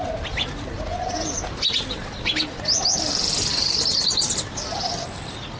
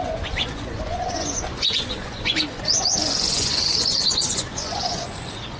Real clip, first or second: first